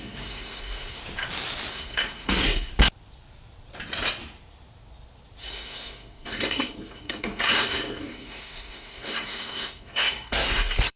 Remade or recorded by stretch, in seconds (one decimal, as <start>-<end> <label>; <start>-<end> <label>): 0.0-1.0 remade; 1.0-1.7 recorded; 1.7-2.7 remade; 2.7-5.4 recorded; 5.4-11.0 remade

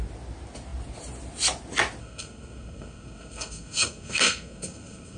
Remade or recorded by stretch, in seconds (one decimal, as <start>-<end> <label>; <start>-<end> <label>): 0.0-2.0 recorded; 2.0-5.2 remade

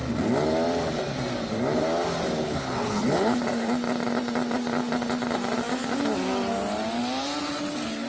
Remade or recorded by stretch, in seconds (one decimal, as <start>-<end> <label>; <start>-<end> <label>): 0.0-2.4 recorded; 2.4-3.4 remade; 3.4-8.1 recorded

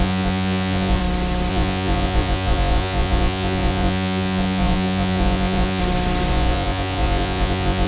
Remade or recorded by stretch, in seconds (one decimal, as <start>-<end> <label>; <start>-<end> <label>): 0.0-1.0 remade; 1.0-1.5 recorded; 1.5-5.8 remade; 5.8-6.3 recorded; 6.3-7.9 remade